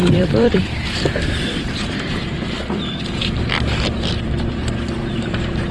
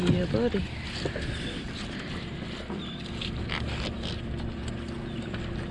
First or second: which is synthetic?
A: first